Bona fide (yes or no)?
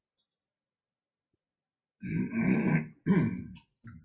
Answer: yes